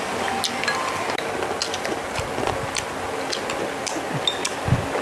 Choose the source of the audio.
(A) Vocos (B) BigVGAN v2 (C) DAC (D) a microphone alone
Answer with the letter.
D